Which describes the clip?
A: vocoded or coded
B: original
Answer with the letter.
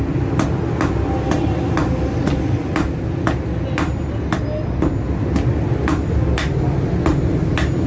B